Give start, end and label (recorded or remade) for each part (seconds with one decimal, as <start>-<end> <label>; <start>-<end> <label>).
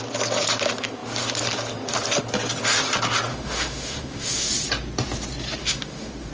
0.0-3.3 recorded; 3.3-4.5 remade; 4.5-5.6 recorded; 5.6-6.3 remade